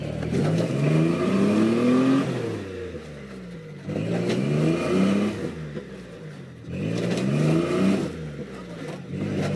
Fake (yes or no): no